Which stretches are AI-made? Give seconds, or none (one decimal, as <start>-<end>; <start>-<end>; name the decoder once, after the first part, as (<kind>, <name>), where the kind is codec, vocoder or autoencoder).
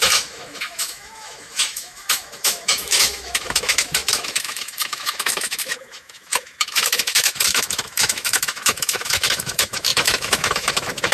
0.0-11.1 (autoencoder, DAC-VAE)